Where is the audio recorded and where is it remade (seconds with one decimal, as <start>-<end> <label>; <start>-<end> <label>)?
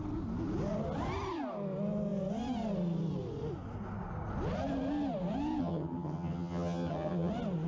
0.0-5.6 recorded; 5.6-7.3 remade; 7.3-7.7 recorded